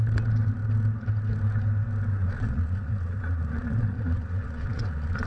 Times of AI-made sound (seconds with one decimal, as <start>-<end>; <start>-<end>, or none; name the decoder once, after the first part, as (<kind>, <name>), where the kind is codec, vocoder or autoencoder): 2.1-5.3 (vocoder, Vocos)